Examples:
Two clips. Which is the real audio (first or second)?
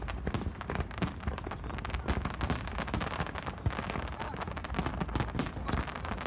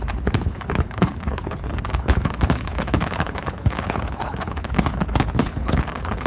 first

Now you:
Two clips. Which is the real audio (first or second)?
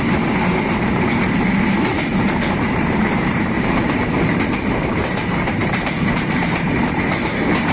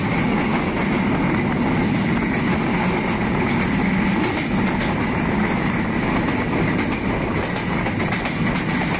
second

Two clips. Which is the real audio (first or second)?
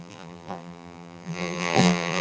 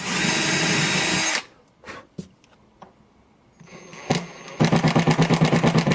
second